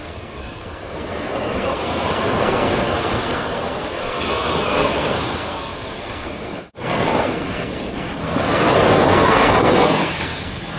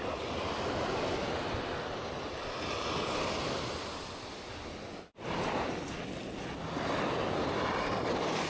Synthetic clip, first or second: first